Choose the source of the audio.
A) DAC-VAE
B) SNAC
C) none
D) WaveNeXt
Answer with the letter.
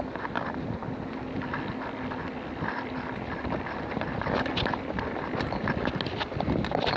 C